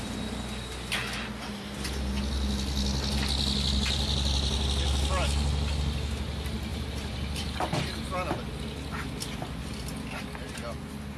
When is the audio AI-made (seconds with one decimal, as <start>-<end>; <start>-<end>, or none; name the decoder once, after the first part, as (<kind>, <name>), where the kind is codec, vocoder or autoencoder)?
6.7-8.1 (vocoder, BigVGAN v2)